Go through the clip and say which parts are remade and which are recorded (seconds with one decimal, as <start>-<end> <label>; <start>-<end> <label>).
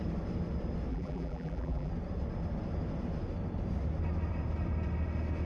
0.0-0.9 recorded; 0.9-1.9 remade; 1.9-5.5 recorded